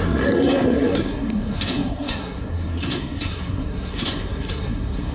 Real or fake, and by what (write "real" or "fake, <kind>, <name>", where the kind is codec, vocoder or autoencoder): fake, codec, SNAC